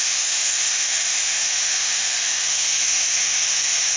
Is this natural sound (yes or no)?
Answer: no